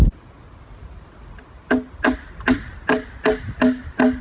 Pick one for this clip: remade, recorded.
recorded